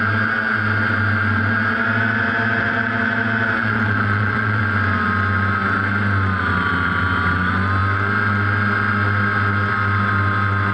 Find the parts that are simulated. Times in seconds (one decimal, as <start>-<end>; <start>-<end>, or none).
3.6-4.6